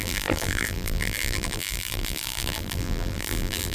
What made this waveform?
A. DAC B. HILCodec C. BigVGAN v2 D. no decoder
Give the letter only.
C